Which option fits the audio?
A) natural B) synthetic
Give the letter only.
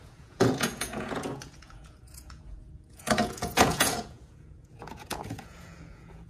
B